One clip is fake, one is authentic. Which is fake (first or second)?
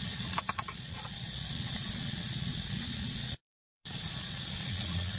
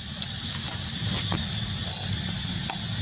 first